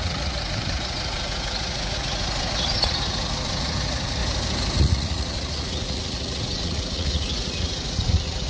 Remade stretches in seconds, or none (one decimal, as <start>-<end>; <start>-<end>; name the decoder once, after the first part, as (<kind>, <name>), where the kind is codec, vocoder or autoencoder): 0.0-4.2 (vocoder, Vocos); 4.8-8.5